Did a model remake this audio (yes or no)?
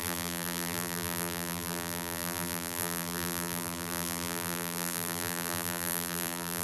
yes